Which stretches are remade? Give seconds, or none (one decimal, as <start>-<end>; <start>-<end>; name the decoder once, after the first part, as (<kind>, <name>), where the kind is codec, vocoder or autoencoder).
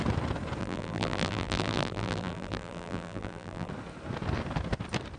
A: 0.6-3.7 (vocoder, BigVGAN v2)